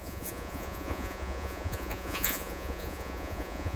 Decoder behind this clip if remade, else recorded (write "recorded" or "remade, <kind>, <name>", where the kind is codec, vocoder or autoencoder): remade, vocoder, Vocos